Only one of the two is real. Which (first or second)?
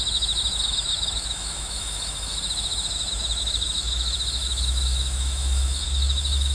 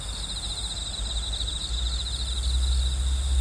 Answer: second